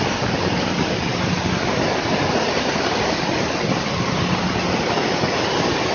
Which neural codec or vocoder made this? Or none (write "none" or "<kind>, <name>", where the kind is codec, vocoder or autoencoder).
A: none